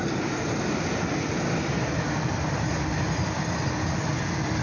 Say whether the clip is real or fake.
real